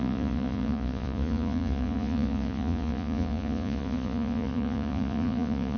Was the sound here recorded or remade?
remade